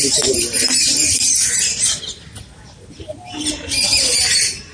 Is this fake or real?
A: real